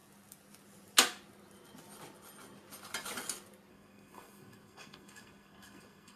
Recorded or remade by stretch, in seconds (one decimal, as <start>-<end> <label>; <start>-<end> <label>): 0.0-3.7 recorded; 3.7-6.2 remade